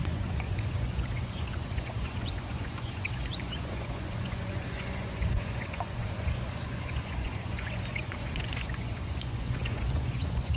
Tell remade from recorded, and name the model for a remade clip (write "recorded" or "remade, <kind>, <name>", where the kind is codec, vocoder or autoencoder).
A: remade, vocoder, Vocos